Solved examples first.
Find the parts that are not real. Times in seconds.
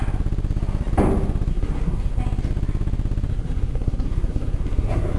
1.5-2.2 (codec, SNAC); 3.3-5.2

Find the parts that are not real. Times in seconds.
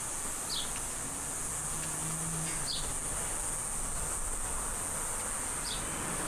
none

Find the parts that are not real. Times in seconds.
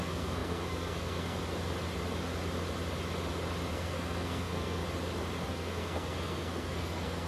0.0-1.4 (codec, SNAC); 3.7-4.8; 5.5-7.3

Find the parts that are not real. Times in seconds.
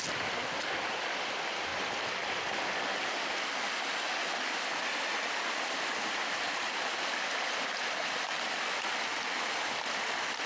none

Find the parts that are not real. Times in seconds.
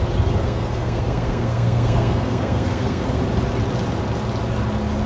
0.4-3.2 (codec, SNAC)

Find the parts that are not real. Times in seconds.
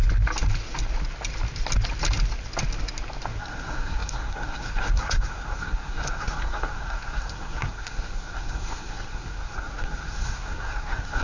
3.4-11.2 (codec, SNAC)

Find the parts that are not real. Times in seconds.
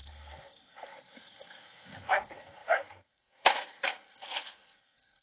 0.0-5.2 (codec, SNAC)